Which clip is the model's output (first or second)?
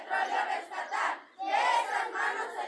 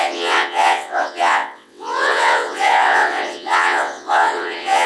second